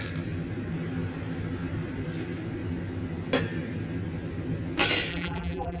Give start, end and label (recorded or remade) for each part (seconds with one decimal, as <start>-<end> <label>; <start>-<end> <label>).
0.0-5.1 recorded; 5.1-5.8 remade